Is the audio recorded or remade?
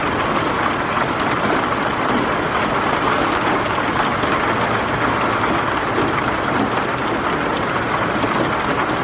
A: recorded